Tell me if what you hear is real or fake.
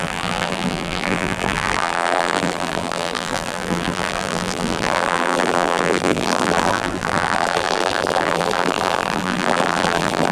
fake